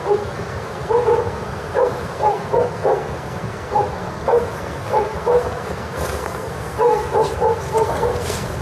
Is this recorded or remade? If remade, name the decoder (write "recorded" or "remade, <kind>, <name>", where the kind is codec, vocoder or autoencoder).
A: remade, codec, SNAC